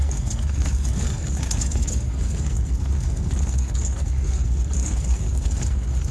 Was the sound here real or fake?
fake